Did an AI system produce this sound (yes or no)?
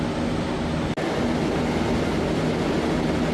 no